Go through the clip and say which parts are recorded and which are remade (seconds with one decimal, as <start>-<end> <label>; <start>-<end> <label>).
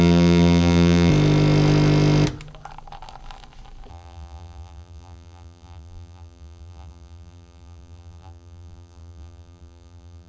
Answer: 0.0-1.1 remade; 1.1-3.9 recorded; 3.9-10.3 remade